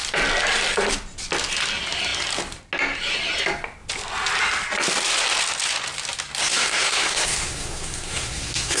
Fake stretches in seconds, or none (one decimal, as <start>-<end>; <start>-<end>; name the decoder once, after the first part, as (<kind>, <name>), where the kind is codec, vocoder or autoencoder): 6.4-8.8 (codec, SNAC)